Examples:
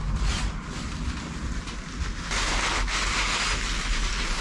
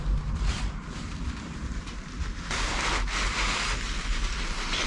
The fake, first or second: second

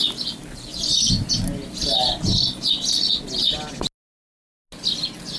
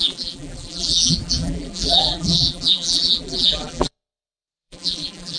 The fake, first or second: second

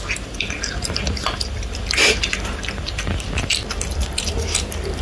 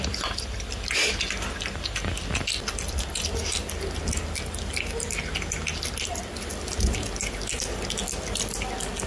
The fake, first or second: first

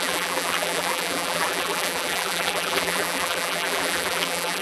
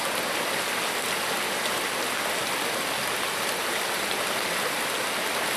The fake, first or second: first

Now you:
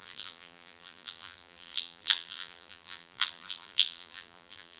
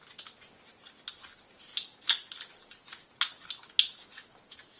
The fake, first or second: first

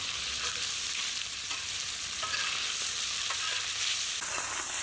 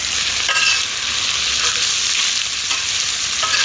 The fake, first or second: first